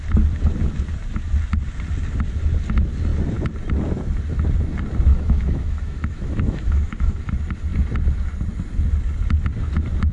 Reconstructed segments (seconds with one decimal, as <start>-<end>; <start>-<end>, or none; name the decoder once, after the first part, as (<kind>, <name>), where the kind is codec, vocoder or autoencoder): 5.1-7.3 (autoencoder, DAC-VAE)